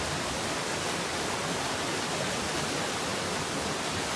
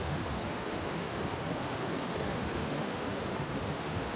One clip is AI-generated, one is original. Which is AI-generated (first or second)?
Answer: second